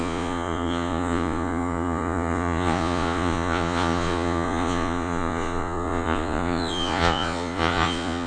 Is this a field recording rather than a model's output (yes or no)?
no